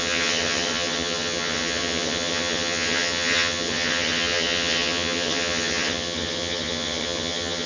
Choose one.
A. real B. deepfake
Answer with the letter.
B